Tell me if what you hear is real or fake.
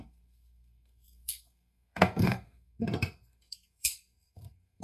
fake